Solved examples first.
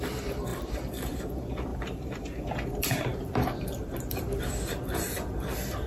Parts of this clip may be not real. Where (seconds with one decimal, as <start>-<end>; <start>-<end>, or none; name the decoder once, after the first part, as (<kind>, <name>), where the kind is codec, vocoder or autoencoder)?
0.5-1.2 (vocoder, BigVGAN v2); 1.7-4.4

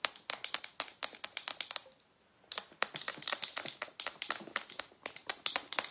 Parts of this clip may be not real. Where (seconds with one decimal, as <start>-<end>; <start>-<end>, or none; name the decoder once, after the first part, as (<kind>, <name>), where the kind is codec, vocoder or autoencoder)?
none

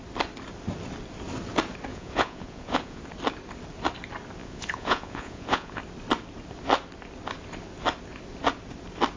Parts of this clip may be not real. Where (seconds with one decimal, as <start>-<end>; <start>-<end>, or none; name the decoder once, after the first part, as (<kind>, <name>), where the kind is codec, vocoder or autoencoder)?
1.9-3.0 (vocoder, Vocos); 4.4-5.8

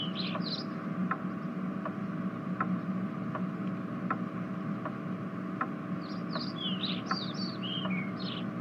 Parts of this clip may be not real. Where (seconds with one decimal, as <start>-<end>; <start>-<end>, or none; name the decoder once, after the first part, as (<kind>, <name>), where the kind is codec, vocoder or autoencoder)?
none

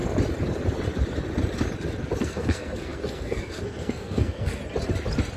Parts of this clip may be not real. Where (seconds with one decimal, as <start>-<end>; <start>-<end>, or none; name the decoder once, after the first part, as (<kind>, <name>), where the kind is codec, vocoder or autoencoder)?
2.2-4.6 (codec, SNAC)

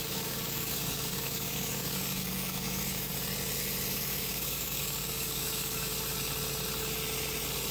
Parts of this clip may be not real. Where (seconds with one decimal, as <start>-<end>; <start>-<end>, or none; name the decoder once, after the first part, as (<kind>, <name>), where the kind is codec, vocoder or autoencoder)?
0.0-3.1 (codec, DAC); 3.9-5.9

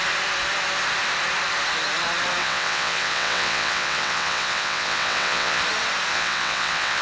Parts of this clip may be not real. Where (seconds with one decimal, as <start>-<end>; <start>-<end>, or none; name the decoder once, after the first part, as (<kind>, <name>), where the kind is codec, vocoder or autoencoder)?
2.4-5.6 (vocoder, WaveNeXt); 6.1-7.0